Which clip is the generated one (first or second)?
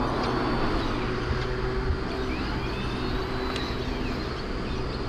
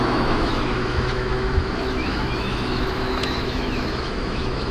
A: second